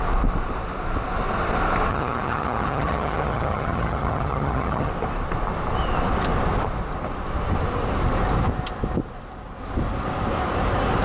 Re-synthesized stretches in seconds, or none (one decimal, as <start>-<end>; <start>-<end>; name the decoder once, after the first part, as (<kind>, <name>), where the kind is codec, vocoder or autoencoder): 1.9-4.9 (vocoder, HiFi-GAN)